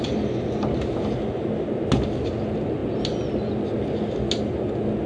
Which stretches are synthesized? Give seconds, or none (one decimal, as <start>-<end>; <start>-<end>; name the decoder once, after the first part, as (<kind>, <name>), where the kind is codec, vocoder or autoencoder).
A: none